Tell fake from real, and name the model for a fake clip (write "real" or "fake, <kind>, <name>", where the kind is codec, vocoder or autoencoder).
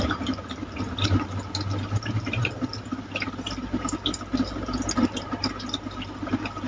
fake, vocoder, BigVGAN v2